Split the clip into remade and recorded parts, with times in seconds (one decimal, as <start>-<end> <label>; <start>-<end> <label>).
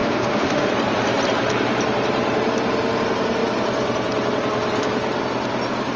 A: 0.0-0.7 remade; 0.7-6.0 recorded